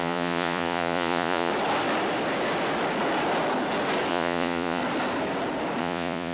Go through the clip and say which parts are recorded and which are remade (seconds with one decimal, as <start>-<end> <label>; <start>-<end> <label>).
0.0-1.5 remade; 1.5-4.1 recorded; 4.1-4.8 remade; 4.8-5.8 recorded; 5.8-6.3 remade